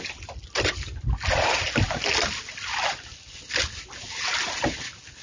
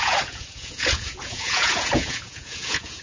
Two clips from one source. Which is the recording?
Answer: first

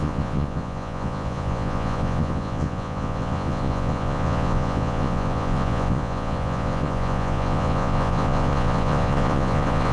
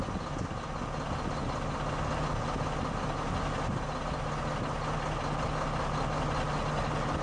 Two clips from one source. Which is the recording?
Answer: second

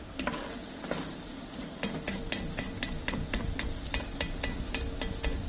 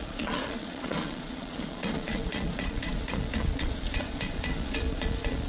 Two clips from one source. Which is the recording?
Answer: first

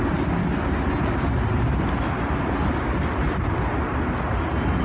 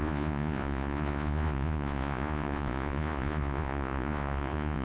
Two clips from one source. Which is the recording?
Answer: first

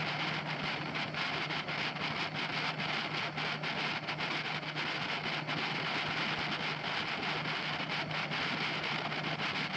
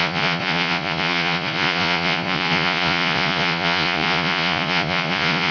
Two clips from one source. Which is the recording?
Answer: first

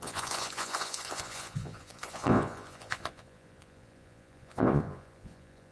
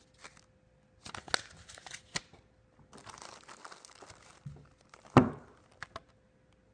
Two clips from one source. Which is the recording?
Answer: second